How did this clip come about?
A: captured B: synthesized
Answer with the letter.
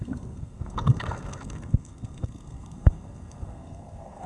B